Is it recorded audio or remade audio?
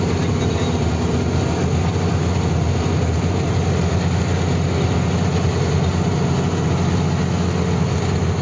recorded